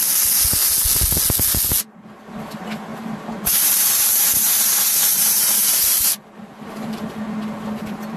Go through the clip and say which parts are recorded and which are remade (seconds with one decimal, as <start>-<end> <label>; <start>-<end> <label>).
0.0-2.9 recorded; 2.9-7.0 remade; 7.0-8.2 recorded